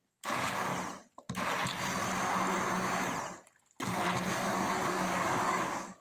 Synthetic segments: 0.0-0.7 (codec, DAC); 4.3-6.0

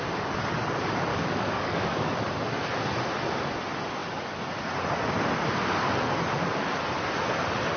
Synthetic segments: 1.1-2.2 (codec, DAC)

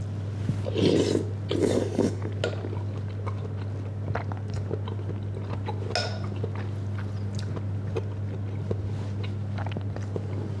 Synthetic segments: 1.6-2.3 (codec, DAC)

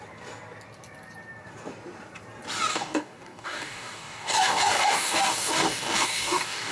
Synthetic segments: 2.7-6.7 (codec, DAC)

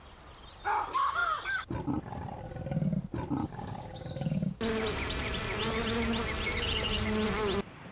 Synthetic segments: 3.4-4.5 (codec, DAC)

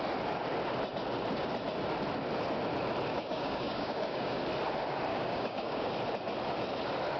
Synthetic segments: 3.1-4.4 (codec, DAC); 5.1-5.9

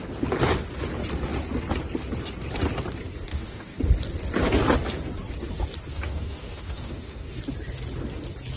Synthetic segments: 3.3-3.8 (codec, DAC); 5.9-7.4

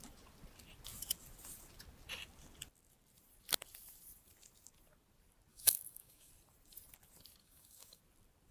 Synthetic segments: 5.5-6.3 (codec, DAC); 7.4-8.0